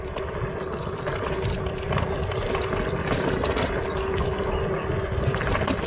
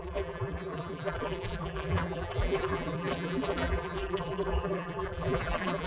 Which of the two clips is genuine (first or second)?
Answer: first